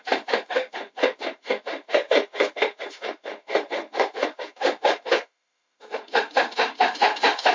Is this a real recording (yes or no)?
no